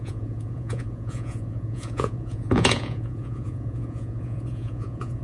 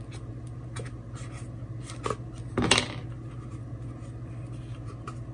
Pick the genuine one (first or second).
second